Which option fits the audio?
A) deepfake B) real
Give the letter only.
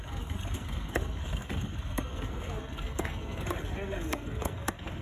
A